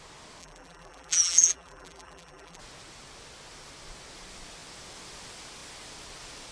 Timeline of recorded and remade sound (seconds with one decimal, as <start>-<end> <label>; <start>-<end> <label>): 0.0-0.4 recorded; 0.4-2.6 remade; 2.6-6.5 recorded